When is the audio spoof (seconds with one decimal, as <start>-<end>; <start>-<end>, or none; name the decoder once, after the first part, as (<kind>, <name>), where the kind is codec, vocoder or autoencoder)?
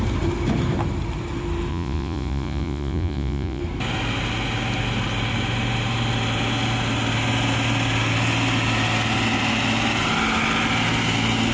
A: 1.7-3.6 (vocoder, Vocos)